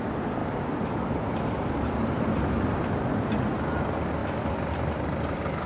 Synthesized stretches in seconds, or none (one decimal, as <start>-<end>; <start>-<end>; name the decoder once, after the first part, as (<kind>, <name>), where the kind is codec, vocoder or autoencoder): none